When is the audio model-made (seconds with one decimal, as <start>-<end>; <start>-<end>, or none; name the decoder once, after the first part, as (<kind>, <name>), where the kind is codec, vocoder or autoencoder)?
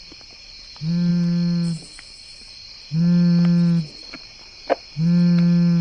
none